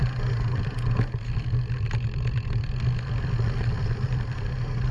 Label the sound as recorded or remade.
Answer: recorded